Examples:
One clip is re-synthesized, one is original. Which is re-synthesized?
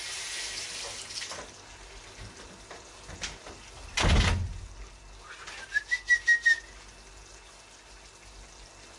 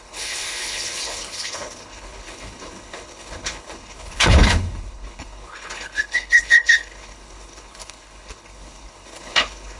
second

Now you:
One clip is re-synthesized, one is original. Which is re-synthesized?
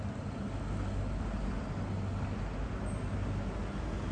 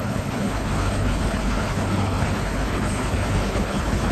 second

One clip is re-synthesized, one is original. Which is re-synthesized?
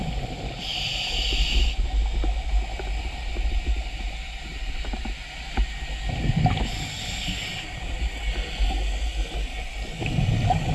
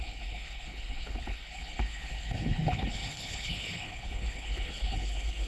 second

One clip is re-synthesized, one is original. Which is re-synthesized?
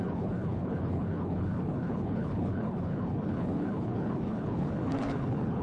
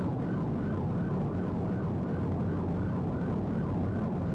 first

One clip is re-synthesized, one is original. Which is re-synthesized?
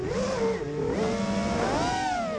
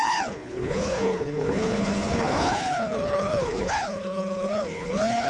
second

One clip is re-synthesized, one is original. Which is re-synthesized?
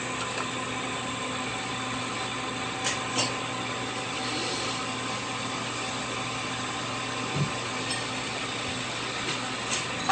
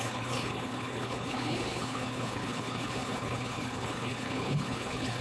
second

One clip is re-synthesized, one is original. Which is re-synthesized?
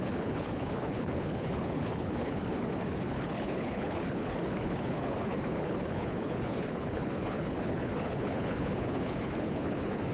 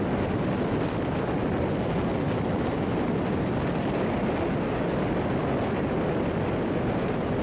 first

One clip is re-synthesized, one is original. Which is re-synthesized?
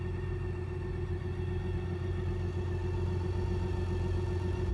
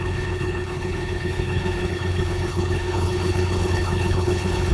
second